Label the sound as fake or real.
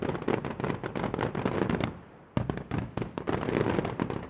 real